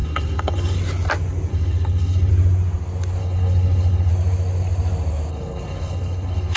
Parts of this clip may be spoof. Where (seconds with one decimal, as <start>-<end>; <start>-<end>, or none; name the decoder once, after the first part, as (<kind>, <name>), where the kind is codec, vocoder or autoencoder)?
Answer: 0.0-0.8 (codec, HILCodec); 1.5-2.3; 3.2-4.1; 5.3-6.6